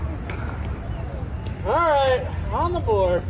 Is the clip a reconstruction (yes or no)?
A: no